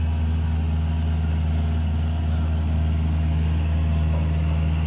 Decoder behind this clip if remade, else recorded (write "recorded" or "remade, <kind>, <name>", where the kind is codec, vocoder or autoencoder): recorded